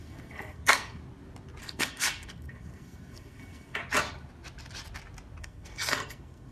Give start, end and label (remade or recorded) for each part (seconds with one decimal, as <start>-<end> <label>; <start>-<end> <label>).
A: 0.0-1.0 remade; 1.0-1.6 recorded; 1.6-3.8 remade; 3.8-5.4 recorded; 5.4-6.5 remade